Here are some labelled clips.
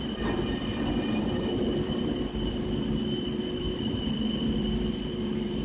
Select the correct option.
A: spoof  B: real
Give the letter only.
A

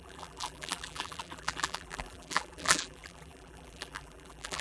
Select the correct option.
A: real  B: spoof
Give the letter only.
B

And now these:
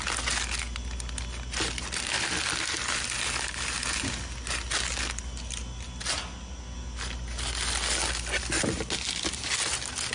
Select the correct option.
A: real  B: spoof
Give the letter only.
A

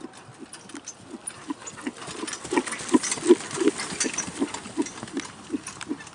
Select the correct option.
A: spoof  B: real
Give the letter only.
B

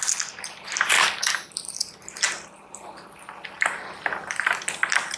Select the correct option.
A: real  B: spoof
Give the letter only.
A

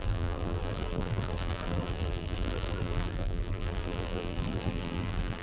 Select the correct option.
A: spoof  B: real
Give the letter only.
A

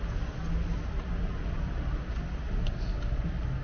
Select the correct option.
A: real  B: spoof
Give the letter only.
A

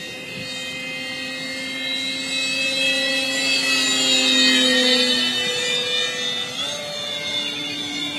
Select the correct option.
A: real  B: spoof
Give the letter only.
A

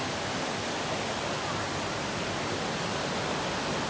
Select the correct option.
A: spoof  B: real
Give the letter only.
B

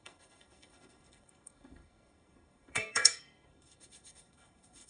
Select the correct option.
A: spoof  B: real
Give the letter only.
A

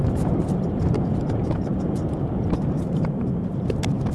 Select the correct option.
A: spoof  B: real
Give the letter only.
A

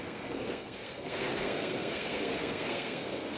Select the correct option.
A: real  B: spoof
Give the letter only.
B